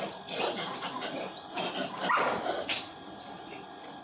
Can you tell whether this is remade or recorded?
recorded